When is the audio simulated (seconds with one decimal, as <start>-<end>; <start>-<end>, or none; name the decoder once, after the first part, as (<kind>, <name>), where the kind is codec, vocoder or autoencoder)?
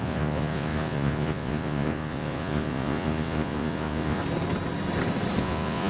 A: 0.0-4.2 (vocoder, Vocos); 5.4-5.9